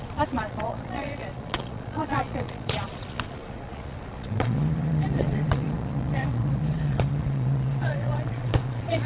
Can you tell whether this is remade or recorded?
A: remade